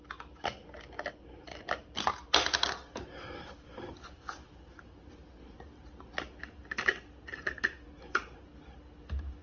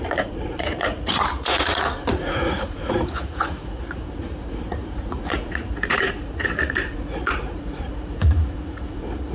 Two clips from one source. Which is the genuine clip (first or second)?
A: first